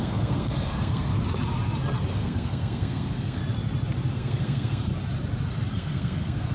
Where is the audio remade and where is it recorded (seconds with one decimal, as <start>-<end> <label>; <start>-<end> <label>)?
0.0-1.1 remade; 1.1-2.1 recorded; 2.1-3.4 remade; 3.4-4.1 recorded; 4.1-4.9 remade; 4.9-5.7 recorded; 5.7-6.5 remade